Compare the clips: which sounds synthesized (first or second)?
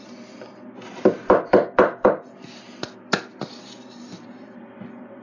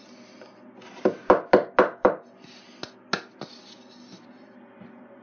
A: first